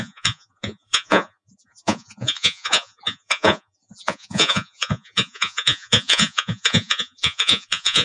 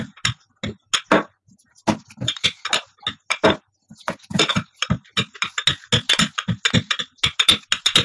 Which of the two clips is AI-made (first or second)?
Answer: first